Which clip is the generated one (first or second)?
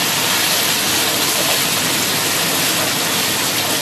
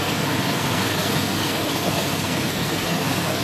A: second